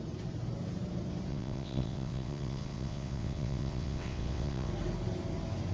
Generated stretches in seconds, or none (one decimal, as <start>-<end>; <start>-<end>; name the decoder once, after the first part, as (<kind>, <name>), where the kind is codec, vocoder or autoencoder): 1.3-4.7 (vocoder, WaveNeXt)